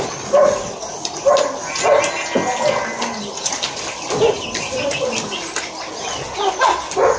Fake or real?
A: real